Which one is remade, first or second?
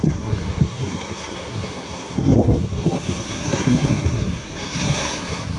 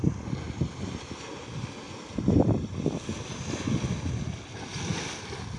first